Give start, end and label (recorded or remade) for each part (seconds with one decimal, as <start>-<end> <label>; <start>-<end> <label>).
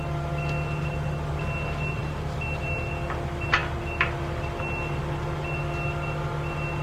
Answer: 0.0-6.8 recorded